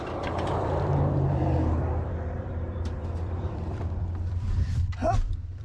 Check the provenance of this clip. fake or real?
fake